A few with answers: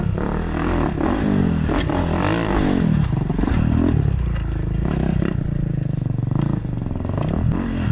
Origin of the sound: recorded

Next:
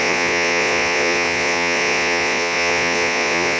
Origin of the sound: remade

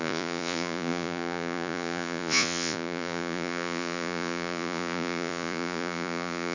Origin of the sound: remade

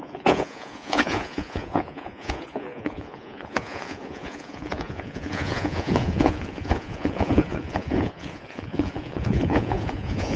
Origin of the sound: remade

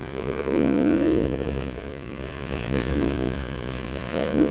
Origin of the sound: remade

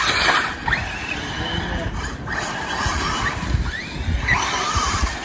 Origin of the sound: recorded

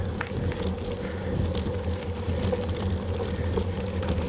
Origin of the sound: recorded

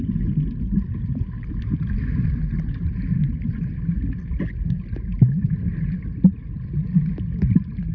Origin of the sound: recorded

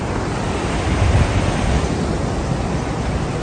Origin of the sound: recorded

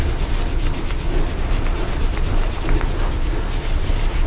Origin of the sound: recorded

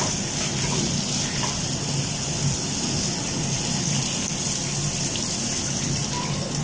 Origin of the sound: recorded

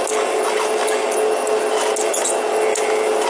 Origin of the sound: recorded